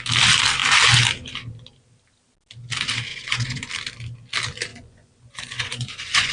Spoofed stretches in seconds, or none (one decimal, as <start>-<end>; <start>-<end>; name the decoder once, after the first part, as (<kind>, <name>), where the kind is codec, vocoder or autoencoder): 3.1-3.7 (vocoder, Vocos); 4.7-6.3